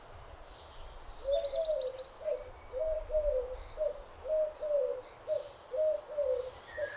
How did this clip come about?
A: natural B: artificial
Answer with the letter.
A